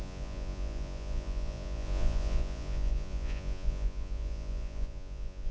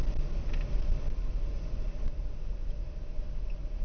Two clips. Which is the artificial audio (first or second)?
first